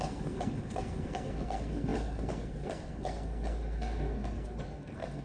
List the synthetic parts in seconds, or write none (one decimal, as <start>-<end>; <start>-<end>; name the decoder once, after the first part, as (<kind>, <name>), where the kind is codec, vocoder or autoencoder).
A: 0.0-5.2 (codec, SNAC)